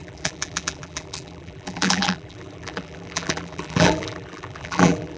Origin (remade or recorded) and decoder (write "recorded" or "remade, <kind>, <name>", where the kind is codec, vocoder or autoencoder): remade, vocoder, BigVGAN v2